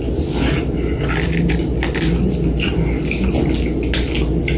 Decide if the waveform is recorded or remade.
recorded